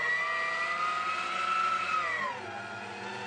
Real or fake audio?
real